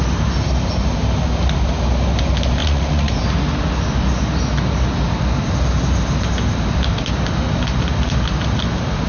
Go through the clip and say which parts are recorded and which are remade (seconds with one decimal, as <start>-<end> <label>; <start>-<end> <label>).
0.0-2.6 recorded; 2.6-3.1 remade; 3.1-9.1 recorded